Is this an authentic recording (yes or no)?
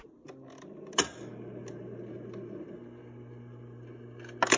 yes